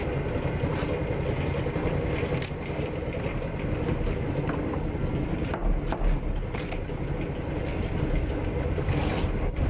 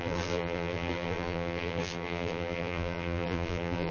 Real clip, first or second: first